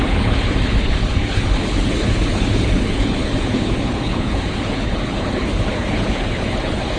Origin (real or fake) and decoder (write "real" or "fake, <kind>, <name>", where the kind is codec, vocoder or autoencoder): fake, codec, HILCodec